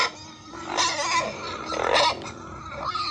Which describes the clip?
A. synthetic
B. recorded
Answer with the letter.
B